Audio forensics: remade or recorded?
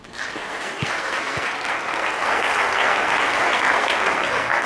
remade